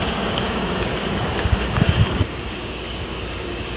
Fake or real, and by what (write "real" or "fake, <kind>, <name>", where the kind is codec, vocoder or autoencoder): fake, codec, DAC